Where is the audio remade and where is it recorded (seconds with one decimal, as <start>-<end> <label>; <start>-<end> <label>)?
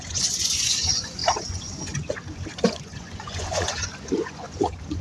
0.0-5.0 remade